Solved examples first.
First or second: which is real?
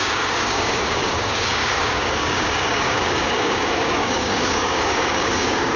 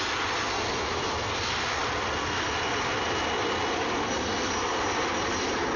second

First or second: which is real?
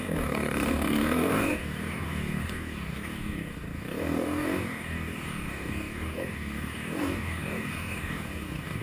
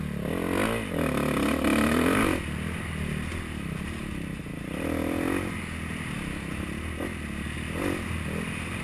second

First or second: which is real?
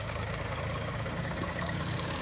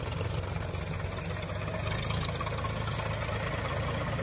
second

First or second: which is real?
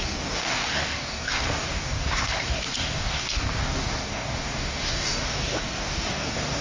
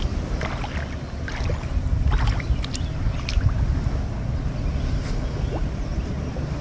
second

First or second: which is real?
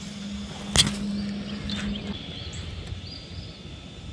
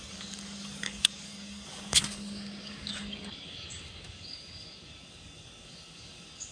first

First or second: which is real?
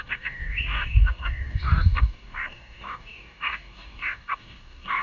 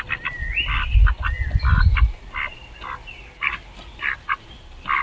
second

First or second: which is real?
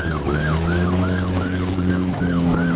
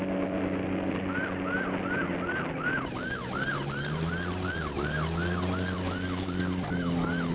second